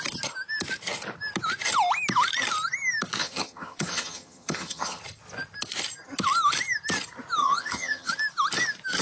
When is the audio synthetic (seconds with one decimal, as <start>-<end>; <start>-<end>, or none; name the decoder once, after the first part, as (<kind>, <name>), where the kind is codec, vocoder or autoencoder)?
3.2-5.0 (vocoder, HiFi-GAN); 7.4-8.1